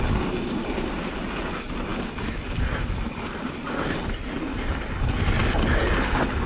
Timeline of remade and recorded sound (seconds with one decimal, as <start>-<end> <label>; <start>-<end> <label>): 0.0-6.5 recorded